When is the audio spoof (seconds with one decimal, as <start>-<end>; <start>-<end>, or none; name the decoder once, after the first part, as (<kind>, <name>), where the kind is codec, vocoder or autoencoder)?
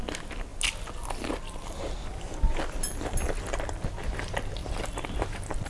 4.6-5.7 (vocoder, BigVGAN v2)